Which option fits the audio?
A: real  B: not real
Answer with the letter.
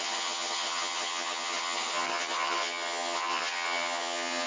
B